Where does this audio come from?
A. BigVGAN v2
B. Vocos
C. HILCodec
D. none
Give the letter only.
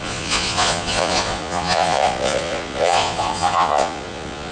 B